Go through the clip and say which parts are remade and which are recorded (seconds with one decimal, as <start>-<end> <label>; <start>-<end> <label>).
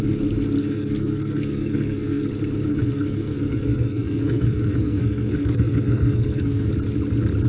0.0-0.6 recorded; 0.6-2.3 remade; 2.3-2.7 recorded; 2.7-6.7 remade; 6.7-7.5 recorded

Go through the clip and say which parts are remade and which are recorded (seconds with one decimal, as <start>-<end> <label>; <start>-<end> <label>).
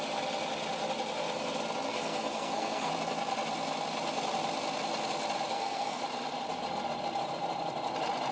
0.0-1.9 recorded; 1.9-2.9 remade; 2.9-5.5 recorded; 5.5-6.0 remade; 6.0-8.3 recorded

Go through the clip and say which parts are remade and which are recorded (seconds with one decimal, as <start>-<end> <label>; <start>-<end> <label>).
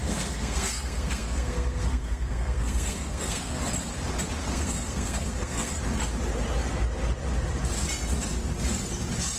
0.0-3.6 remade; 3.6-4.4 recorded; 4.4-5.8 remade; 5.8-9.4 recorded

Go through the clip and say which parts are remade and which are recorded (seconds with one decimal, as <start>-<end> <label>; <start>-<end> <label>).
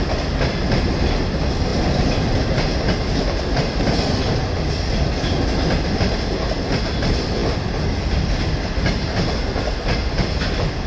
0.0-10.9 recorded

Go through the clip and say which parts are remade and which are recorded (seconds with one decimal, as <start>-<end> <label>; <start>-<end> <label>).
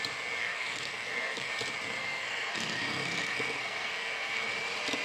0.0-0.4 recorded; 0.4-1.5 remade; 1.5-2.0 recorded; 2.0-4.5 remade; 4.5-5.0 recorded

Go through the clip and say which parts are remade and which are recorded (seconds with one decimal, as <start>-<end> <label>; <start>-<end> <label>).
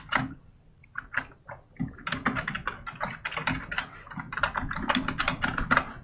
0.0-6.0 recorded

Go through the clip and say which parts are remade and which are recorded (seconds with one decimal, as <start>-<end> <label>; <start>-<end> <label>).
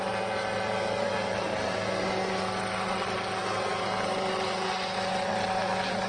0.0-6.1 recorded